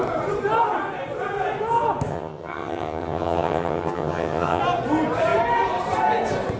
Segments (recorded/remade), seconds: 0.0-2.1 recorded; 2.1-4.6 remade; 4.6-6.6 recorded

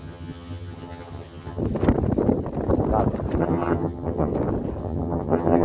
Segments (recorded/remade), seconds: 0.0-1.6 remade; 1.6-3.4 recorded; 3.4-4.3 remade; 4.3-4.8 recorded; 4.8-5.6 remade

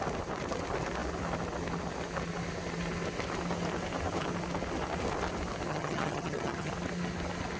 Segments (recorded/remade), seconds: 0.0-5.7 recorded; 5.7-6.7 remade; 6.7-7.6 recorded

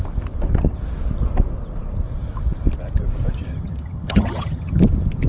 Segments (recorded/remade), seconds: 0.0-3.5 recorded; 3.5-4.8 remade; 4.8-5.3 recorded

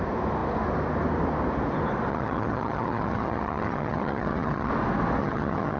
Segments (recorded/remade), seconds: 0.0-2.1 recorded; 2.1-4.7 remade; 4.7-5.2 recorded; 5.2-5.8 remade